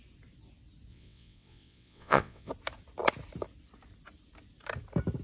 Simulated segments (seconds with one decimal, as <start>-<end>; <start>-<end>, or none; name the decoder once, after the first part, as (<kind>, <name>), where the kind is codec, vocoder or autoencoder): 0.9-2.5 (vocoder, WaveNeXt)